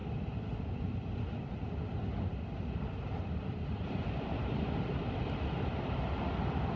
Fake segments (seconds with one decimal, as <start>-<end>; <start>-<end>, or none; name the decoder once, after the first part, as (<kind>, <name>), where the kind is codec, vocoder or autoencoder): none